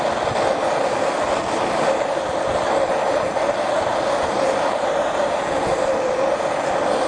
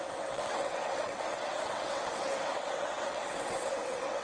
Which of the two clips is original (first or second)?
first